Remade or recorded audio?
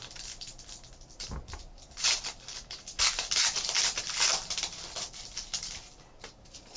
recorded